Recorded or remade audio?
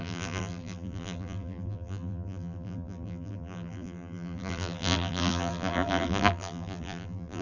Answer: remade